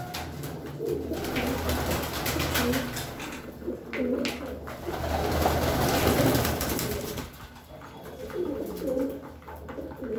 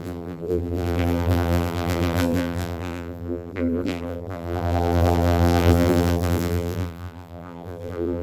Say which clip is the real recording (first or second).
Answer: first